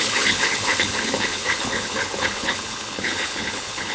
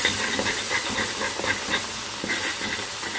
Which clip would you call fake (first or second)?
first